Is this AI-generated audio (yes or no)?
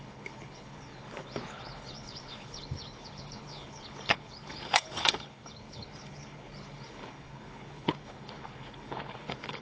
yes